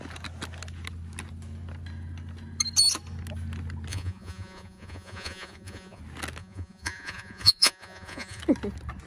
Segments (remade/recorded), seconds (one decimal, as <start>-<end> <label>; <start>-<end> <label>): 0.0-3.9 recorded; 3.9-6.0 remade; 6.0-6.4 recorded; 6.4-8.4 remade; 8.4-9.1 recorded